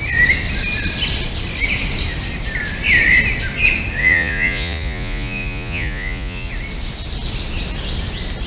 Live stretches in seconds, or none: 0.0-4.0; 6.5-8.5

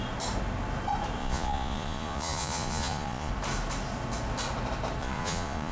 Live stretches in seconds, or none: 0.0-1.2; 3.3-5.0